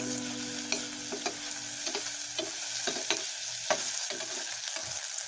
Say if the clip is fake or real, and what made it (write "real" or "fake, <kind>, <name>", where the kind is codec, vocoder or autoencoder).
real